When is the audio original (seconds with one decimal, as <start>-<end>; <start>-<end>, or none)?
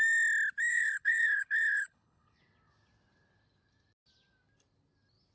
0.0-0.7; 2.4-5.3